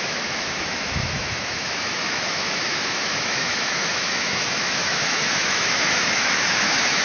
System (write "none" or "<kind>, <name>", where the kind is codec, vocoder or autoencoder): autoencoder, DAC-VAE